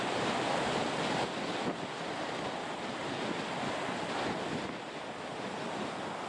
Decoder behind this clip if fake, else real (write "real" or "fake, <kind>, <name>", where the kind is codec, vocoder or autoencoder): real